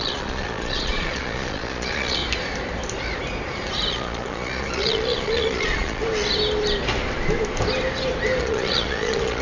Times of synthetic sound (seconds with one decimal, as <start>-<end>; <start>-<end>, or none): 0.0-2.2; 3.9-6.0; 8.4-9.4